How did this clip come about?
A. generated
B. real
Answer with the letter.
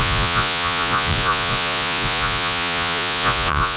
A